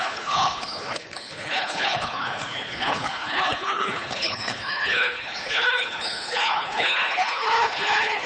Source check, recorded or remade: remade